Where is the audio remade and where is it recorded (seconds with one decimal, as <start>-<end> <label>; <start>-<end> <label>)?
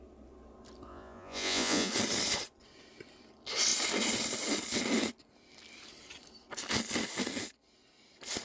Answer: 0.0-0.9 recorded; 0.9-1.9 remade; 1.9-8.4 recorded